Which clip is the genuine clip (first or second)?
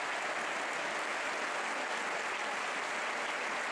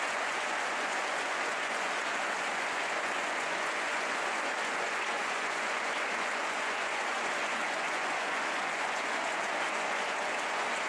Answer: first